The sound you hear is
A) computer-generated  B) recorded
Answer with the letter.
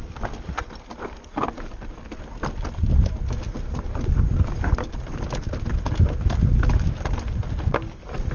B